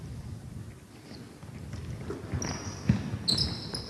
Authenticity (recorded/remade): recorded